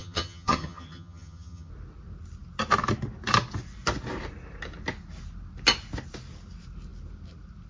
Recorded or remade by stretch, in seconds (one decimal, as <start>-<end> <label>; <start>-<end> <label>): 0.0-1.7 remade; 1.7-7.7 recorded